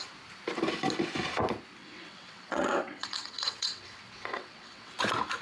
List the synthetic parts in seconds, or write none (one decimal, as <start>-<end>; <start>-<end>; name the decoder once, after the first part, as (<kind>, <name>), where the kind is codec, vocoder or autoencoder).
1.8-5.0 (vocoder, WaveNeXt)